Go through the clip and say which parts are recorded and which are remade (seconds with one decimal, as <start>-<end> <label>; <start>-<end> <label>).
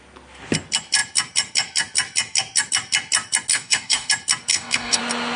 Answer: 0.0-3.5 recorded; 3.5-4.1 remade; 4.1-4.5 recorded; 4.5-5.0 remade; 5.0-5.4 recorded